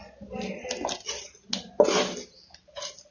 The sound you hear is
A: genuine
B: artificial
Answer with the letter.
A